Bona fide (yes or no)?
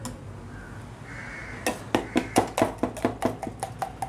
yes